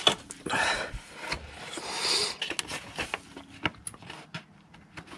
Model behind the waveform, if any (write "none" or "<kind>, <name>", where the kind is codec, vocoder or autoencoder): none